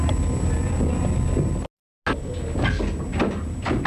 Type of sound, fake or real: real